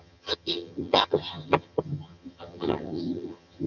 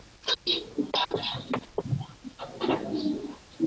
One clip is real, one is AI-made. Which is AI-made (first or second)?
first